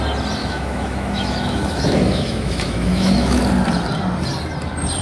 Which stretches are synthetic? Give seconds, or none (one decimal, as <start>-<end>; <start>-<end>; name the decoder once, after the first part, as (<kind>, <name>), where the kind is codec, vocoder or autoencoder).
0.4-3.4 (autoencoder, DAC-VAE)